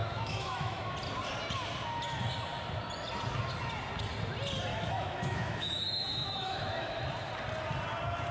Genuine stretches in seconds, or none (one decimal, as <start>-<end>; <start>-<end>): 0.8-4.7; 7.0-8.3